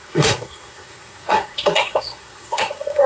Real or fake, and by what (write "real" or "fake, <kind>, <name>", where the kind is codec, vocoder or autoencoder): fake, codec, SNAC